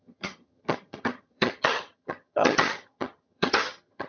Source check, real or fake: fake